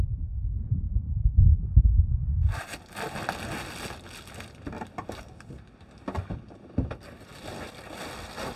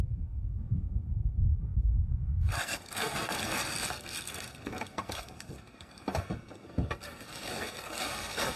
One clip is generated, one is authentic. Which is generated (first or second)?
second